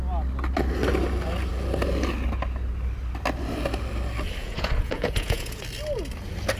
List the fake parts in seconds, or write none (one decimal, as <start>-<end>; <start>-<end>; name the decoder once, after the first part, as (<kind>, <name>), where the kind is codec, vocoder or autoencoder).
4.4-5.6 (vocoder, Vocos)